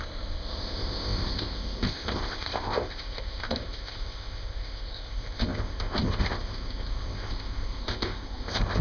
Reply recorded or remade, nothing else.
remade